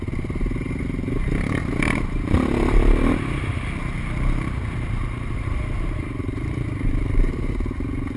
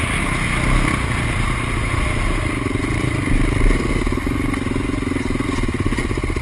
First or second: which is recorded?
second